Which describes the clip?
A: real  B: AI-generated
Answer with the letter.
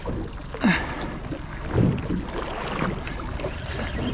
A